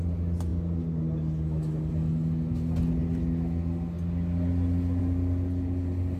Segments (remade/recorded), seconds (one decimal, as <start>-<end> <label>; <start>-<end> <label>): 0.0-6.2 recorded